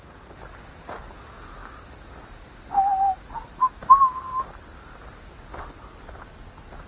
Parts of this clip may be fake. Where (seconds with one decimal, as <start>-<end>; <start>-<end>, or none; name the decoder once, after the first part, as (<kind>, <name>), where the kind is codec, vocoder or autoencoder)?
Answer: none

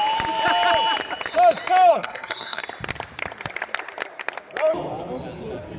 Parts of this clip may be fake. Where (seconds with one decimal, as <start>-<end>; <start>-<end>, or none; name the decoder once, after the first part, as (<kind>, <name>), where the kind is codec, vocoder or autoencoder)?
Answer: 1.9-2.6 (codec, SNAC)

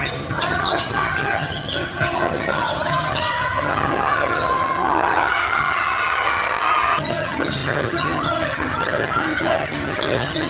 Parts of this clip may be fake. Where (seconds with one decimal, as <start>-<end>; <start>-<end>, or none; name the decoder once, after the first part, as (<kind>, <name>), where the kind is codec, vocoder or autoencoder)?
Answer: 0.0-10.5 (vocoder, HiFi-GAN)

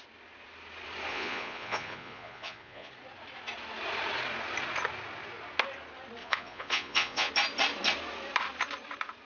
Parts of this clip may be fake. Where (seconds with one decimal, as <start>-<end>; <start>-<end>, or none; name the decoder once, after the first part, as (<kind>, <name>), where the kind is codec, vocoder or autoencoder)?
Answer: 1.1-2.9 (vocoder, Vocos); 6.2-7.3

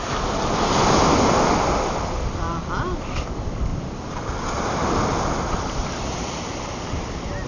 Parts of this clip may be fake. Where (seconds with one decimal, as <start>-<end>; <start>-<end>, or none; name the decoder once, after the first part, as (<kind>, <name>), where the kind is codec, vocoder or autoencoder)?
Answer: none

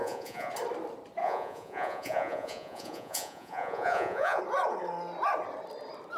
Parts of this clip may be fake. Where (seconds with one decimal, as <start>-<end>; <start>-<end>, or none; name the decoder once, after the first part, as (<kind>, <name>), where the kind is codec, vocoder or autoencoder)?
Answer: 0.0-0.5 (vocoder, Vocos); 1.2-4.4

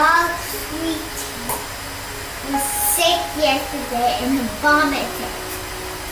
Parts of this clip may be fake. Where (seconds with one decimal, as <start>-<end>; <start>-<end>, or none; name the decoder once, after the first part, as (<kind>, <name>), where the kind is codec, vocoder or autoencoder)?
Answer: none